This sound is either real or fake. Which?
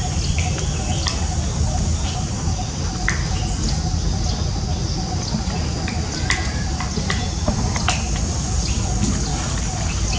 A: real